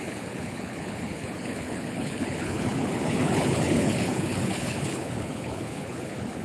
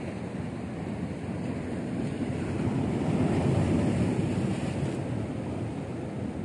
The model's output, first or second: first